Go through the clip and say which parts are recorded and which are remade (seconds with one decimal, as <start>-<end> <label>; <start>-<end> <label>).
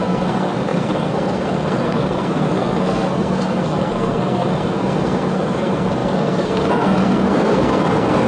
0.0-8.3 remade